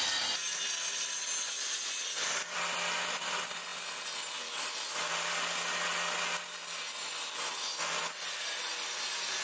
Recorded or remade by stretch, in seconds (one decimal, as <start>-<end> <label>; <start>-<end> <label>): 0.0-9.4 recorded